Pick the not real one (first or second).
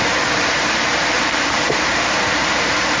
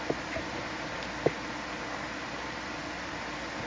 first